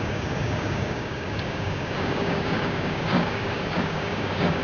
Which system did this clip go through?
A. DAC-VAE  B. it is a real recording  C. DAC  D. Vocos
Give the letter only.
C